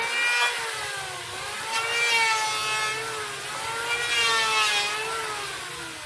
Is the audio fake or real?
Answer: real